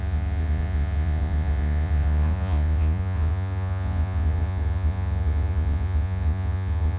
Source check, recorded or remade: remade